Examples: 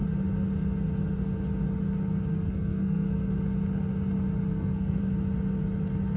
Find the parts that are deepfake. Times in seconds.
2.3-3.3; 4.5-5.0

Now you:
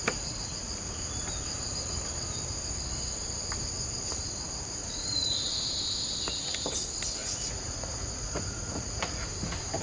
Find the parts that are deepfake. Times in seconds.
4.8-5.5; 7.2-9.3

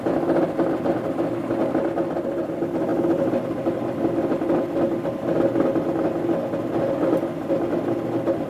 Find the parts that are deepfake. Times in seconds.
none

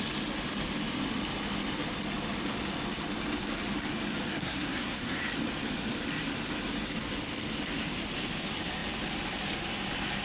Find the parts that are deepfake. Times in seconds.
4.3-5.2

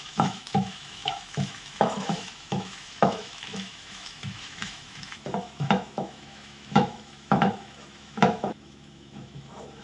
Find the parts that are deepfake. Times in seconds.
0.0-9.8

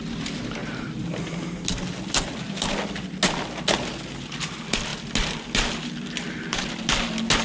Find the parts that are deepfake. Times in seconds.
none

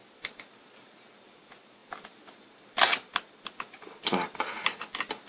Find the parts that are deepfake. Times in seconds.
0.0-0.5